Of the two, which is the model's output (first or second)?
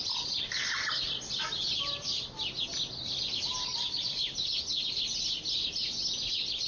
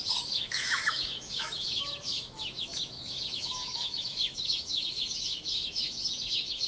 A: second